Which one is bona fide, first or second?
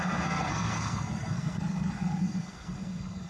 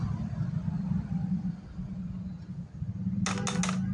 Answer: second